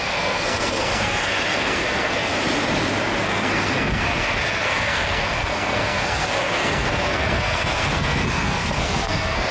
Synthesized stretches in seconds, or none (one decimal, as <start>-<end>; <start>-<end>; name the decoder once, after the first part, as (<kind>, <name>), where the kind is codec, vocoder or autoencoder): 0.0-2.3 (codec, SNAC); 3.2-9.5